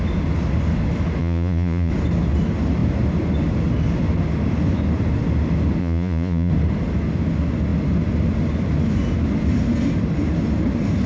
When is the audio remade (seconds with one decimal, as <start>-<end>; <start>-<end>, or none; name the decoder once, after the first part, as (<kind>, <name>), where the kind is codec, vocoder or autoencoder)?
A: 1.2-1.9 (vocoder, Vocos); 5.8-6.5